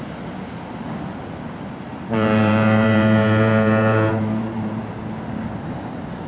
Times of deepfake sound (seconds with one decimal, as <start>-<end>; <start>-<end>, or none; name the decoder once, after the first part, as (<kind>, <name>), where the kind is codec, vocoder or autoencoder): 1.9-4.8 (vocoder, BigVGAN v2)